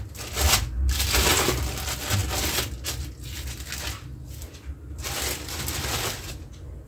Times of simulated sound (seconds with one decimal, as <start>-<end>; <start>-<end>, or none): none